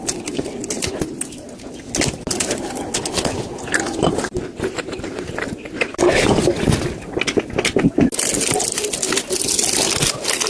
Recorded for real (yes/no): yes